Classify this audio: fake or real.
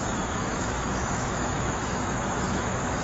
fake